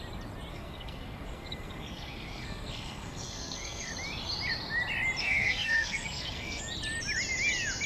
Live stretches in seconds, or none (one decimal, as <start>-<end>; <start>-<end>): 0.0-0.5; 3.9-5.2; 6.6-7.9